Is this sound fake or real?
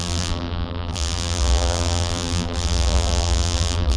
fake